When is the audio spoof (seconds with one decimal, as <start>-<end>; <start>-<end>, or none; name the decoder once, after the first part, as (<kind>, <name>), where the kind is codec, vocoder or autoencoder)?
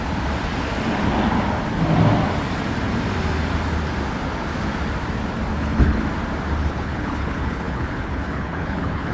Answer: 5.5-6.0 (codec, HILCodec); 6.6-9.1